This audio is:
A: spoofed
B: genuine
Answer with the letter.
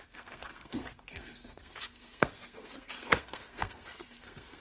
A